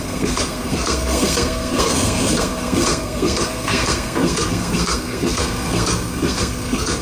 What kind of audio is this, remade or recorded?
remade